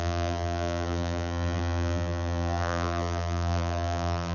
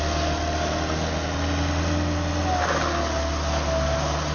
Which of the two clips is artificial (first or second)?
first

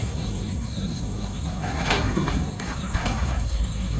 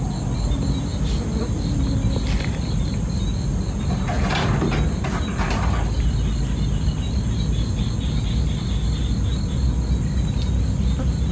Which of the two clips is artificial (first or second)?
first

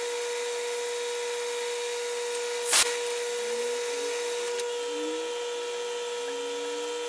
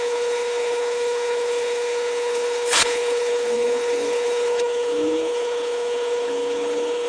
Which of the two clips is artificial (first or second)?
second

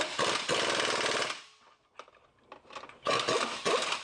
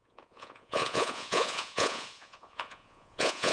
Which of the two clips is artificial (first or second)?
second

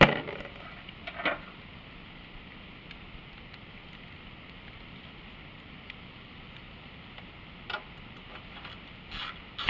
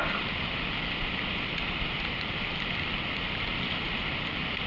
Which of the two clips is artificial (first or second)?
second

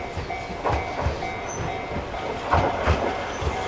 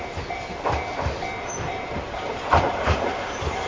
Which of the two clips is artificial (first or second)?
second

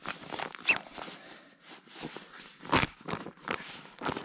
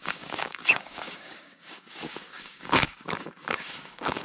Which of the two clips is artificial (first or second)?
second